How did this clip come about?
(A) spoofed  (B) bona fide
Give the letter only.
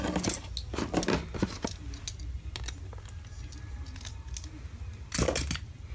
B